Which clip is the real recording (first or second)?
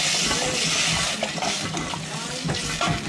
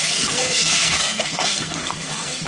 first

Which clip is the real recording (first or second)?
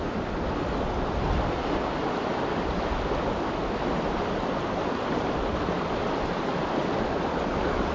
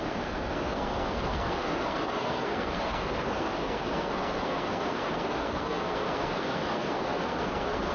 first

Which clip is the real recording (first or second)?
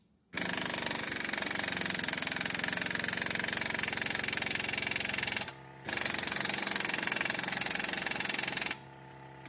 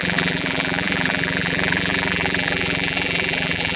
first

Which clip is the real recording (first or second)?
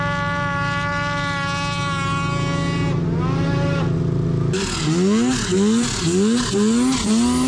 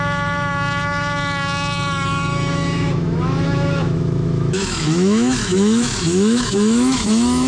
first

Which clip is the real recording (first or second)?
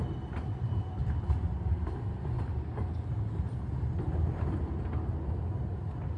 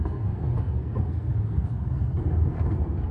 first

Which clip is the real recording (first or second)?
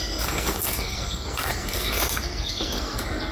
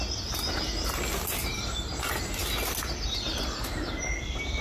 second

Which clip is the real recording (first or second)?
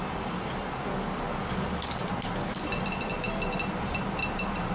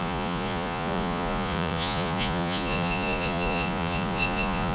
first